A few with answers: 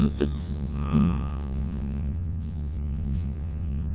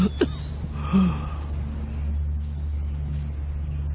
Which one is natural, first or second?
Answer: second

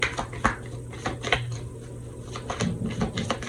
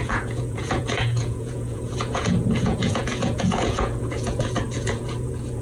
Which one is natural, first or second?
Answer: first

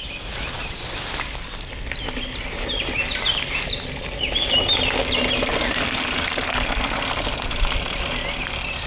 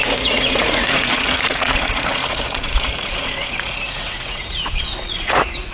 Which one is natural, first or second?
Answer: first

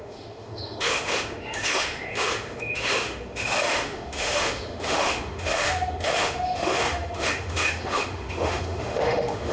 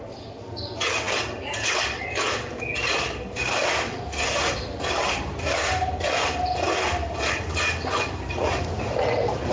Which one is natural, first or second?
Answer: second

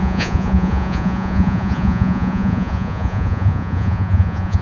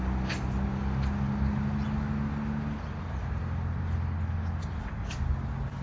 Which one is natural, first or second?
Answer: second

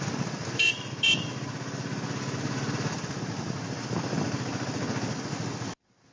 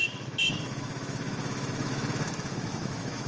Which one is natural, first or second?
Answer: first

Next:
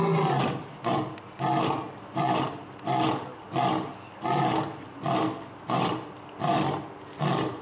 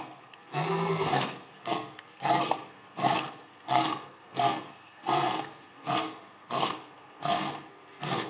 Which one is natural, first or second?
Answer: first